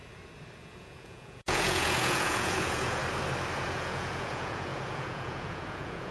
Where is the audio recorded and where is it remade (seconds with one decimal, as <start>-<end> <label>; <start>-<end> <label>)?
0.0-0.8 recorded; 0.8-3.0 remade; 3.0-3.5 recorded; 3.5-6.1 remade